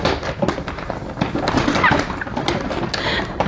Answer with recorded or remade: recorded